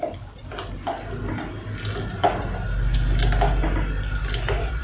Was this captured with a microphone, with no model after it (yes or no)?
yes